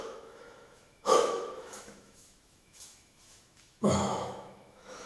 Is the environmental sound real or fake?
fake